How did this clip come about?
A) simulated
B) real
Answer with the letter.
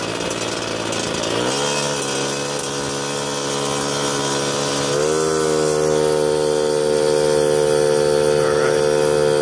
B